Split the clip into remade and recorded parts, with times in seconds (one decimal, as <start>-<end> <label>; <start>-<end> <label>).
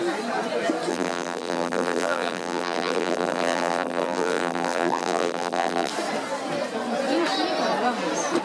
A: 0.0-0.9 recorded; 0.9-5.9 remade; 5.9-8.4 recorded